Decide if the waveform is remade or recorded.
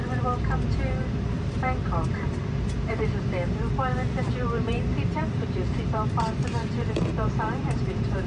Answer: remade